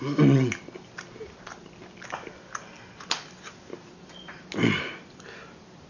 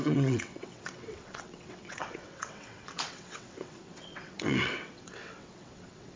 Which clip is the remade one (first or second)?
second